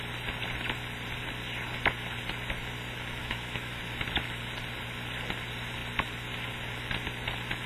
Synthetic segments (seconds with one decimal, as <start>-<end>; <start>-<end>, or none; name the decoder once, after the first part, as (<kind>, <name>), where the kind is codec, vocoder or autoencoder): 3.2-3.8 (autoencoder, DAC-VAE)